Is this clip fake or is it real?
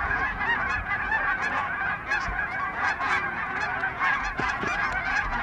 fake